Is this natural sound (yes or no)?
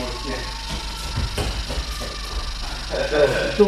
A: yes